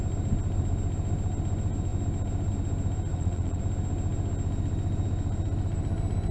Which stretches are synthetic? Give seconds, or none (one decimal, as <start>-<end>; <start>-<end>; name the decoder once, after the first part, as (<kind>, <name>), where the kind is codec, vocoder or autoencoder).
3.1-3.6 (vocoder, WaveNeXt)